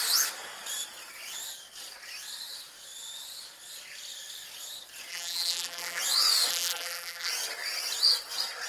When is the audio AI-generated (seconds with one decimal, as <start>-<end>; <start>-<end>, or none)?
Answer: 5.1-6.0; 6.5-7.3